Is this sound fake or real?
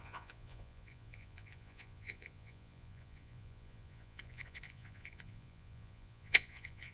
fake